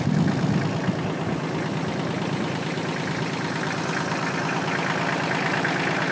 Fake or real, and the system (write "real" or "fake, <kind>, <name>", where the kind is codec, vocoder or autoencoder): real